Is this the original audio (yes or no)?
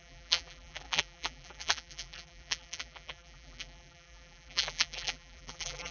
no